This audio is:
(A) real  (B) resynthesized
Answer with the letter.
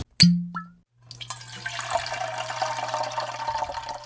A